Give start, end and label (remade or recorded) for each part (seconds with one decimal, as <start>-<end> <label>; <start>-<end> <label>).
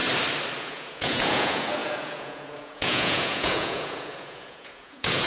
0.0-0.6 recorded; 0.6-5.3 remade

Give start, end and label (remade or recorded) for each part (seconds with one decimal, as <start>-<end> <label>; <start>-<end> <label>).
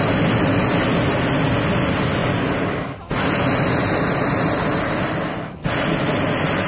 0.0-6.7 recorded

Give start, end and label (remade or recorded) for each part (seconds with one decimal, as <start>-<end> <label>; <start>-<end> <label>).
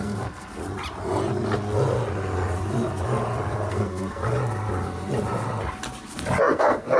0.0-0.6 remade; 0.6-3.7 recorded; 3.7-4.2 remade; 4.2-6.4 recorded; 6.4-7.0 remade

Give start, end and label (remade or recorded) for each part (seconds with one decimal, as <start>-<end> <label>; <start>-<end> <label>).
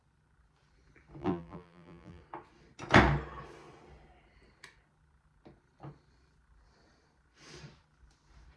0.0-1.2 recorded; 1.2-2.2 remade; 2.2-8.6 recorded